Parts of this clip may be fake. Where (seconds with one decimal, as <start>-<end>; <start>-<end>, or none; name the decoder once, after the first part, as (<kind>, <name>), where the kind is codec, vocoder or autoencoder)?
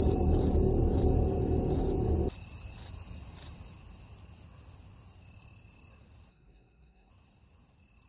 6.3-7.1 (codec, SNAC)